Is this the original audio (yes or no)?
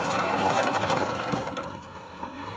no